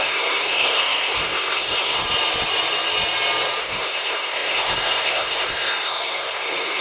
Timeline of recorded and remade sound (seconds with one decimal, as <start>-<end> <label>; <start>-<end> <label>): 0.0-2.0 remade; 2.0-3.6 recorded; 3.6-6.8 remade